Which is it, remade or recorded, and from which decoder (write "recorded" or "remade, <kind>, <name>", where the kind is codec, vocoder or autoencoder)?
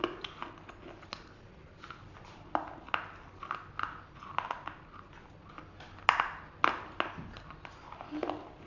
recorded